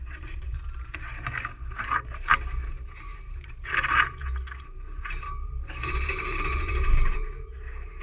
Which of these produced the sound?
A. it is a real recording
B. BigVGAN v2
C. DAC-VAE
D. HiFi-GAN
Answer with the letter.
B